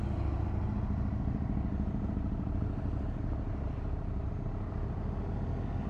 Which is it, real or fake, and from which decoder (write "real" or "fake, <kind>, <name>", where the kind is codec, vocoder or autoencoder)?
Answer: real